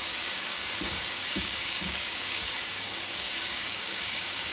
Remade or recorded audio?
remade